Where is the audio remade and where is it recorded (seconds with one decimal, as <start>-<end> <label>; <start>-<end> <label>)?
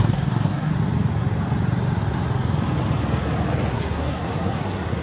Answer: 0.0-0.7 remade; 0.7-3.7 recorded; 3.7-5.0 remade